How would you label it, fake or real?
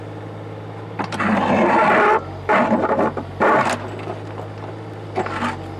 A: real